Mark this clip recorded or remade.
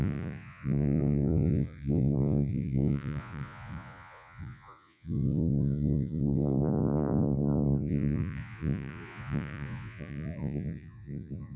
remade